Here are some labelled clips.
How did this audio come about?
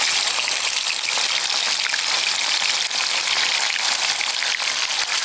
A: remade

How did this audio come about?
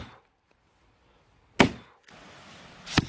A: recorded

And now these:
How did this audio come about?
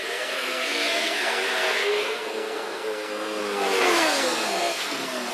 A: remade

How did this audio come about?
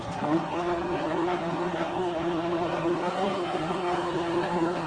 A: remade